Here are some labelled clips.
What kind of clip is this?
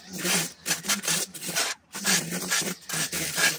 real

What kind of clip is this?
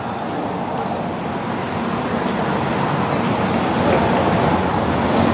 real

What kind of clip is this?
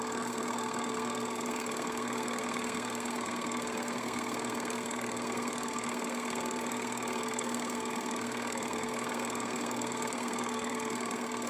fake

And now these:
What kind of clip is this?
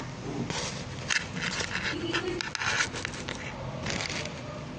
real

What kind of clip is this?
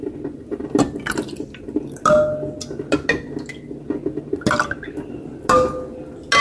real